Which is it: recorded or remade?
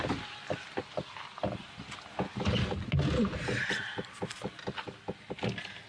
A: recorded